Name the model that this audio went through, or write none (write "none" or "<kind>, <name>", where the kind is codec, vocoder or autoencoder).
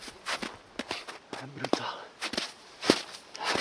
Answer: none